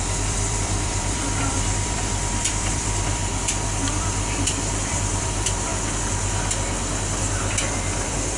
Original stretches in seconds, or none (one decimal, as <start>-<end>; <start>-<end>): 3.2-4.0; 5.7-7.5